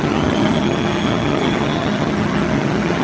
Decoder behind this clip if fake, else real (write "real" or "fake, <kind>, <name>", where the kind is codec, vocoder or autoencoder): fake, vocoder, HiFi-GAN